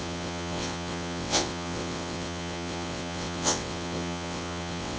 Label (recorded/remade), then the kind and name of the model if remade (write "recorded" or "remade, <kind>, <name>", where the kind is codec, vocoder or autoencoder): remade, vocoder, WaveNeXt